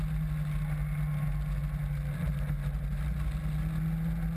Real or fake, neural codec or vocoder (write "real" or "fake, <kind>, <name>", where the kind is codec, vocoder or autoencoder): real